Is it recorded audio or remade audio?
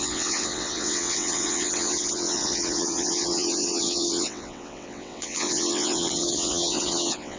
remade